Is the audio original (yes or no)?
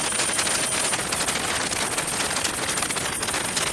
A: yes